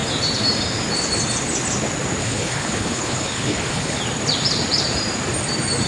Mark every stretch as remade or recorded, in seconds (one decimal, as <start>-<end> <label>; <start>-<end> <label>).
0.0-2.2 recorded; 2.2-4.0 remade; 4.0-5.9 recorded